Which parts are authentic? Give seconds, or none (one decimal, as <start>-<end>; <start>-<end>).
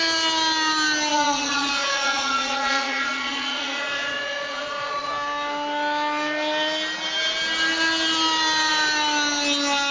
0.0-1.1; 5.1-9.9